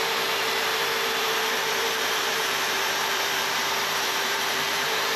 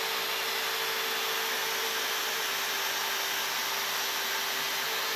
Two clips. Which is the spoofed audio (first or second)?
first